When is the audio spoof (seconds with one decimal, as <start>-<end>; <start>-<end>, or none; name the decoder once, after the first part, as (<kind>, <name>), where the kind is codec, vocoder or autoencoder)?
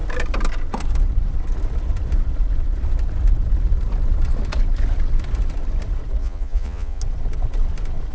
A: 6.2-7.0 (vocoder, Vocos)